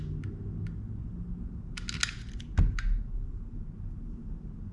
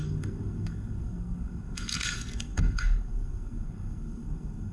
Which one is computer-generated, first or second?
second